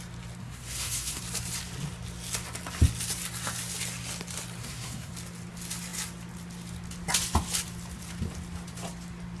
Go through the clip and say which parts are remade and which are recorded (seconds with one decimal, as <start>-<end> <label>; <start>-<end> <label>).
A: 0.0-0.4 recorded; 0.4-1.2 remade; 1.2-4.6 recorded; 4.6-5.1 remade; 5.1-9.4 recorded